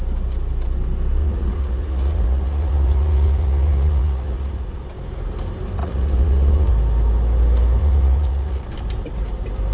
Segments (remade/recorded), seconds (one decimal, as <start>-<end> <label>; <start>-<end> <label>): 0.0-1.2 recorded; 1.2-4.8 remade; 4.8-5.8 recorded; 5.8-6.7 remade; 6.7-7.8 recorded; 7.8-8.7 remade; 8.7-9.7 recorded